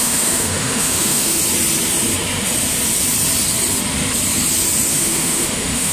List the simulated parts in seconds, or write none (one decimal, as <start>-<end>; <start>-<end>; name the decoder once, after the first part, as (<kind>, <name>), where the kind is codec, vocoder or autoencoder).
0.0-1.4 (autoencoder, DAC-VAE); 4.9-5.9